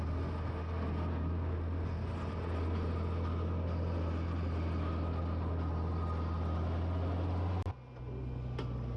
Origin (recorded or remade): recorded